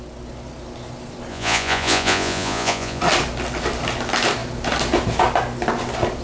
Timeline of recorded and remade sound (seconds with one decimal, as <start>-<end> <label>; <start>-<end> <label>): 0.0-1.3 recorded; 1.3-3.0 remade; 3.0-6.2 recorded